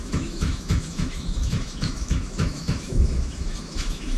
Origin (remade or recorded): remade